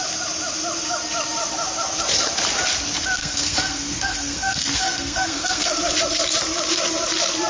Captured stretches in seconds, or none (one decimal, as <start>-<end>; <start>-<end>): 0.0-3.2; 5.8-7.5